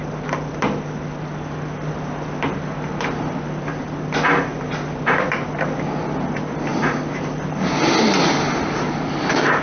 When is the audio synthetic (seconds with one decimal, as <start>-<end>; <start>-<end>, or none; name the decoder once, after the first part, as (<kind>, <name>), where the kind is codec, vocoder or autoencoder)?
none